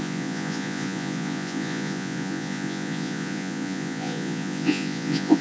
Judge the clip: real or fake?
fake